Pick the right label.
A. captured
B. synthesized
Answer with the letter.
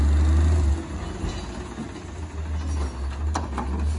A